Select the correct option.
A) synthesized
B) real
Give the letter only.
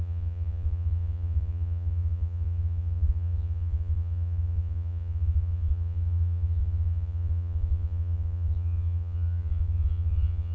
A